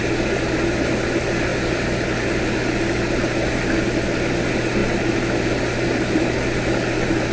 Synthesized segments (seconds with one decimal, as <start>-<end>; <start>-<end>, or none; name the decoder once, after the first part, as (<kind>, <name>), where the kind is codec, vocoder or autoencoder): none